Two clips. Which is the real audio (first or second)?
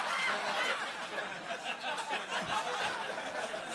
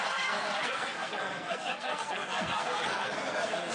first